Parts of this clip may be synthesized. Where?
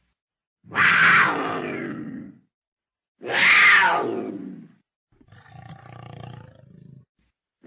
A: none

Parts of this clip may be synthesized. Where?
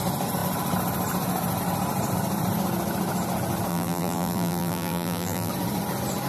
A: 3.7-5.5 (vocoder, BigVGAN v2)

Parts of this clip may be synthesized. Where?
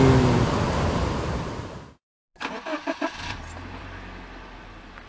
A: none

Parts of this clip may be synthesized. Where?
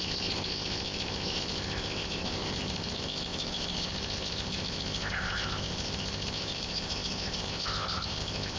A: 0.0-8.6 (codec, ZipCodec)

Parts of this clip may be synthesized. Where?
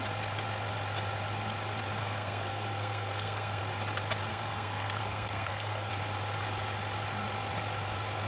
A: 2.0-3.6 (codec, SNAC); 4.3-5.9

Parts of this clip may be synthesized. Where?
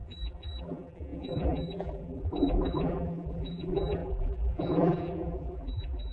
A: 0.0-6.1 (vocoder, BigVGAN v2)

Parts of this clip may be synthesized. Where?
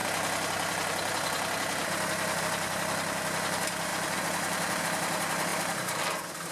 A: 2.4-6.5 (vocoder, BigVGAN v2)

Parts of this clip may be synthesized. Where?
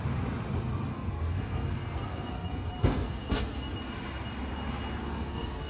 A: 0.9-3.7 (codec, SNAC); 5.0-5.7